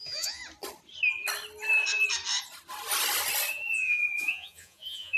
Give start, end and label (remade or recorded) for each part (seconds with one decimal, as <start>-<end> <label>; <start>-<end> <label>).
0.0-0.4 remade; 0.4-3.5 recorded; 3.5-5.2 remade